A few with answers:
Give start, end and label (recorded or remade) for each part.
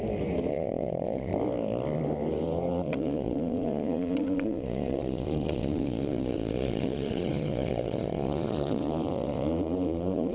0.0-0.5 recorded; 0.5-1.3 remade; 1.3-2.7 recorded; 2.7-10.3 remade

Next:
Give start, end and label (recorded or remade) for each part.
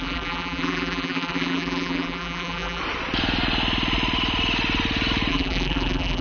0.0-2.8 remade; 2.8-5.3 recorded; 5.3-6.2 remade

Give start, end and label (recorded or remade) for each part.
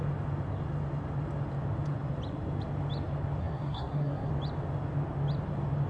0.0-3.4 recorded; 3.4-4.3 remade; 4.3-5.9 recorded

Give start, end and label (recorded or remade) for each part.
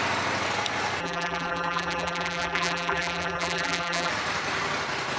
0.0-1.0 recorded; 1.0-4.1 remade; 4.1-5.2 recorded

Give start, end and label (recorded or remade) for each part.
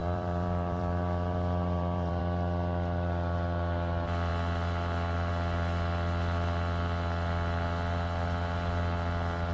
0.0-2.2 remade; 2.2-9.5 recorded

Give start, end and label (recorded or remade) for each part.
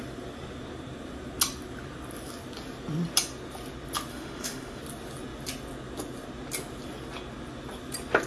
0.0-4.1 recorded; 4.1-4.8 remade; 4.8-8.3 recorded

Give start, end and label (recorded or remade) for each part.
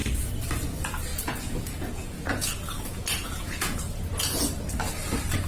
0.0-1.1 recorded; 1.1-4.4 remade; 4.4-5.5 recorded